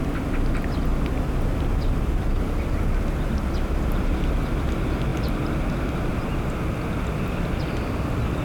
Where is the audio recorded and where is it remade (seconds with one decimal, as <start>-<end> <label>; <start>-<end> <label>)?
0.0-8.4 recorded